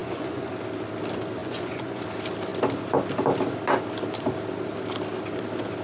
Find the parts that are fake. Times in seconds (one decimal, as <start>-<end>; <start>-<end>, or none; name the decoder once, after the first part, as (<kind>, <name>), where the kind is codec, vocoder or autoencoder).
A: 0.0-0.5 (vocoder, Vocos); 1.4-2.0